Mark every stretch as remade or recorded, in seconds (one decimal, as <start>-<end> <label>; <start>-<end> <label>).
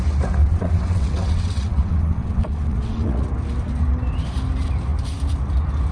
0.0-0.4 recorded; 0.4-3.3 remade; 3.3-5.9 recorded